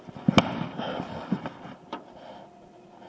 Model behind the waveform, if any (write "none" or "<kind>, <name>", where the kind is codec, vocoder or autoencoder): none